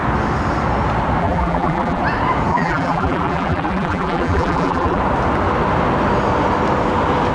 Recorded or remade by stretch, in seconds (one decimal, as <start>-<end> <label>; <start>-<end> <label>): 0.0-1.2 recorded; 1.2-2.0 remade; 2.0-2.5 recorded; 2.5-5.0 remade; 5.0-7.3 recorded